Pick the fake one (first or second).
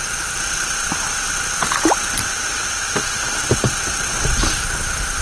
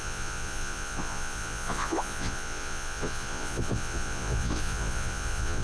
second